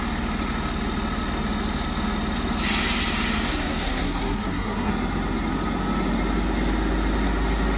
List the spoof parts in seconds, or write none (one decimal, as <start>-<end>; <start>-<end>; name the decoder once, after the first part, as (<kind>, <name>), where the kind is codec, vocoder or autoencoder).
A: 3.5-4.9 (codec, SNAC)